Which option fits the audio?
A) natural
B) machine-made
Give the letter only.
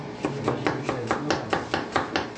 A